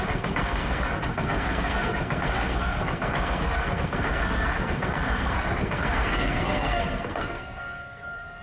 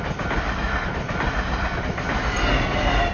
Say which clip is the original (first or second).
second